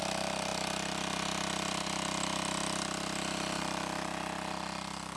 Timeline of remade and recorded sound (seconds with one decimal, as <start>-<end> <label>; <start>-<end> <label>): 0.0-0.5 recorded; 0.5-3.6 remade; 3.6-5.2 recorded